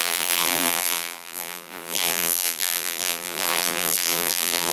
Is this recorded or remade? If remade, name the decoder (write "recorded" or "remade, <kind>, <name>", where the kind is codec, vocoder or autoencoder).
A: remade, vocoder, BigVGAN v2